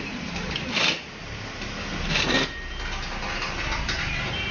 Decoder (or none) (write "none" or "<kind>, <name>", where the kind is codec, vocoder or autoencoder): none